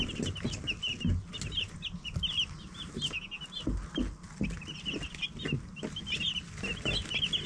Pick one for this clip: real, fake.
real